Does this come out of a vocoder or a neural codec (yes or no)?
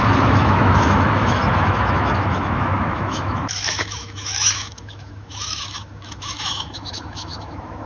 yes